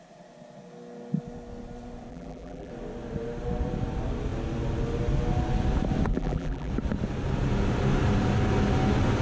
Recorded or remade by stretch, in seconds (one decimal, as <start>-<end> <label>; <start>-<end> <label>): 0.0-2.1 recorded; 2.1-2.7 remade; 2.7-6.1 recorded; 6.1-6.7 remade; 6.7-9.2 recorded